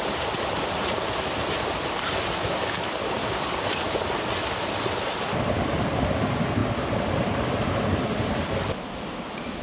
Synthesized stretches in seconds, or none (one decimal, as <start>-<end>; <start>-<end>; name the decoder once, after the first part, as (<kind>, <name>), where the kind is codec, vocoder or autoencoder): none